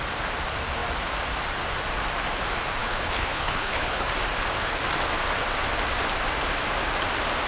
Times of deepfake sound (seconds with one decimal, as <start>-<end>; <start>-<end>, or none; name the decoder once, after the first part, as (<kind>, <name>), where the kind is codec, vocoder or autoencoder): 2.8-4.1 (codec, HILCodec)